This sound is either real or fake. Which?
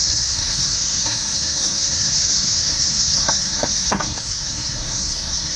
fake